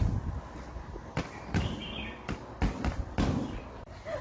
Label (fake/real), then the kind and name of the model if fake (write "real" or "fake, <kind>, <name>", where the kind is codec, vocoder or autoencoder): real